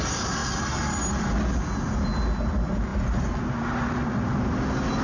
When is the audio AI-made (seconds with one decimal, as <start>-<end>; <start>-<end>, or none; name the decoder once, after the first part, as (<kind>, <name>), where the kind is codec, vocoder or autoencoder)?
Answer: none